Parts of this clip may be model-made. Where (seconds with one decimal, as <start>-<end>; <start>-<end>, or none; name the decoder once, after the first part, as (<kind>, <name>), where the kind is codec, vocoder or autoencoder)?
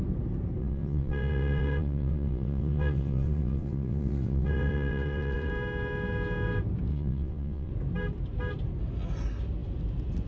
0.6-5.5 (vocoder, WaveNeXt); 6.9-7.7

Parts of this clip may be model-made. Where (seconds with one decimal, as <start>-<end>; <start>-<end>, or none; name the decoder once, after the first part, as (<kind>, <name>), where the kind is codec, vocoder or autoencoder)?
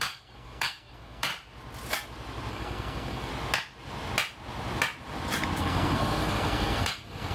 0.0-1.3 (codec, SNAC); 2.5-3.3; 5.6-7.3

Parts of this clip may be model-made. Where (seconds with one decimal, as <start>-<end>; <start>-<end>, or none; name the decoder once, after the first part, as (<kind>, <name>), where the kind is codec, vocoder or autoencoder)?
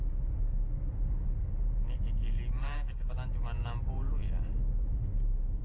2.6-3.1 (codec, SNAC)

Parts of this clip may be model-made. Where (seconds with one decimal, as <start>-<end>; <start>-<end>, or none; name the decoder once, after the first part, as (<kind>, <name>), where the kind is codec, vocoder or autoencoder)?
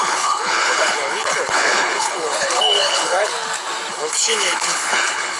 0.0-3.3 (codec, HILCodec); 3.9-5.4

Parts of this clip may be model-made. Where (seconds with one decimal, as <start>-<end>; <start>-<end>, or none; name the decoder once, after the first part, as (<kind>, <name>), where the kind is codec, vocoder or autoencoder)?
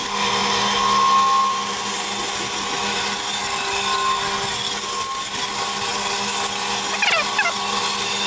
none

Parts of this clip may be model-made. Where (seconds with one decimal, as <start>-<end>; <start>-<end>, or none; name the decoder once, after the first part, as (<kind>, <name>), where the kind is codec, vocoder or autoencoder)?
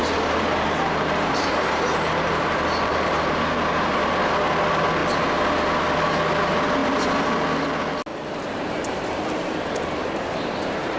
0.0-3.1 (vocoder, BigVGAN v2); 8.1-9.8